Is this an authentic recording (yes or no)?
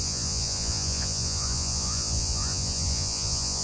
no